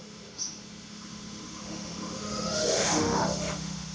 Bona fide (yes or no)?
no